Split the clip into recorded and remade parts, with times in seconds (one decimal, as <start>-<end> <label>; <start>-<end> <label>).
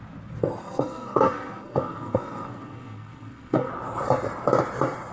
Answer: 0.0-0.6 recorded; 0.6-3.7 remade; 3.7-5.1 recorded